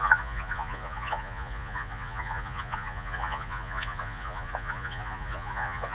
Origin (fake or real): fake